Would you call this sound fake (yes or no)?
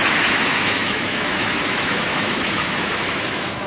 yes